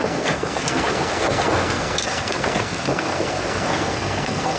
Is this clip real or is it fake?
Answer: fake